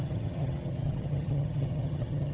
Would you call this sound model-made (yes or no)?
yes